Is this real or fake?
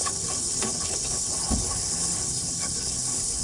fake